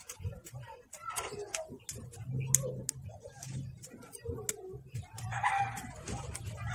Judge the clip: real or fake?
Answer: real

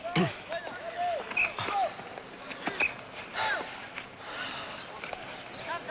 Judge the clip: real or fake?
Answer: real